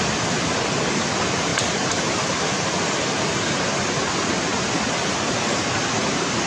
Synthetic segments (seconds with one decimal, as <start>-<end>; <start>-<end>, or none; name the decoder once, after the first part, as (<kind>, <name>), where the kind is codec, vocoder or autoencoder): none